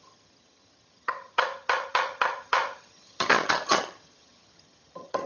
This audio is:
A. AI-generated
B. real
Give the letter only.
A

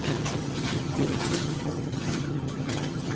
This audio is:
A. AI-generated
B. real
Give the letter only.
A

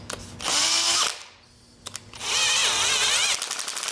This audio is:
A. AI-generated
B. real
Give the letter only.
B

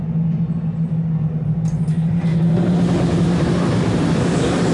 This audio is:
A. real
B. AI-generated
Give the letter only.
A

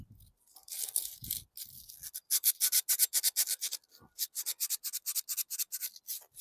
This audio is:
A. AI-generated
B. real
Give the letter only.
B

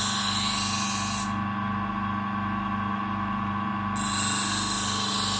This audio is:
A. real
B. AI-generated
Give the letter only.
A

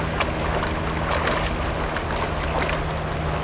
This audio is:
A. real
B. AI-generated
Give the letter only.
A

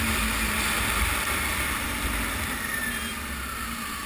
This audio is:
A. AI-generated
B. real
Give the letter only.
B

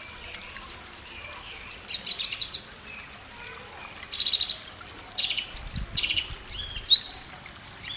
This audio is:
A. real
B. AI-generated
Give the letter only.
A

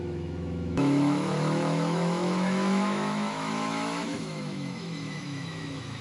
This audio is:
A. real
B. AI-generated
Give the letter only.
B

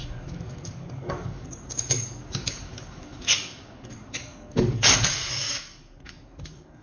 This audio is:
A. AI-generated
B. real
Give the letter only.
A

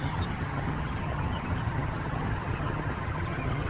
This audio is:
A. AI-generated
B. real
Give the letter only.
A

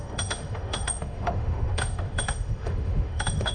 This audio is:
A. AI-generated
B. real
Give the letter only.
A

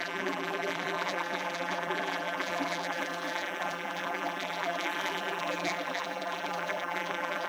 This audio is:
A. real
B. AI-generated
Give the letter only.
B